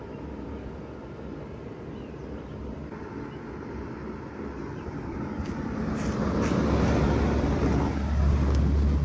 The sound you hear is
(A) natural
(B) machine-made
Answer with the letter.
A